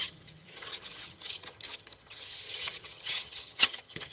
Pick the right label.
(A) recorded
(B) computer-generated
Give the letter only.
B